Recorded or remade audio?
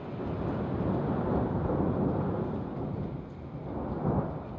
recorded